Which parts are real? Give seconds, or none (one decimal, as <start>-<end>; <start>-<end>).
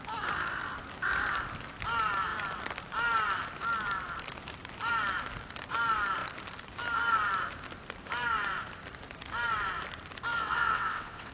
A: 0.0-10.3